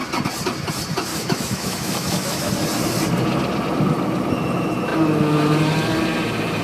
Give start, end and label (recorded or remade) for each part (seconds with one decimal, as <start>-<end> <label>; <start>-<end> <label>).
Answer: 0.0-1.1 recorded; 1.1-2.5 remade; 2.5-6.6 recorded